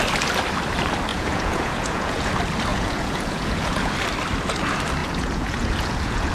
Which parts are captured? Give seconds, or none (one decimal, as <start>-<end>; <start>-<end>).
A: 0.0-1.1; 2.3-2.7; 3.9-5.0